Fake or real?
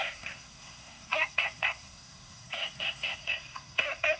fake